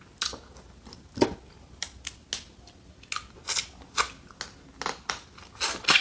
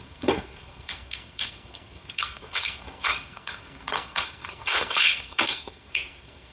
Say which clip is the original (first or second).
first